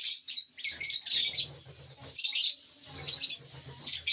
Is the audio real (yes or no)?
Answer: yes